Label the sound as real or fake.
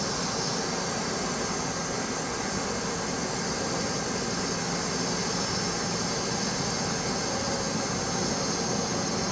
real